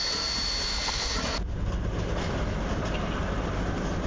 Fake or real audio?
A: real